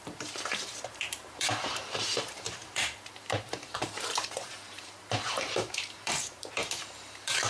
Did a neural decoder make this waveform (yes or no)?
yes